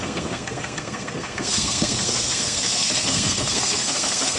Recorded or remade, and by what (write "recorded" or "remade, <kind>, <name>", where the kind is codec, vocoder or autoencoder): remade, codec, SNAC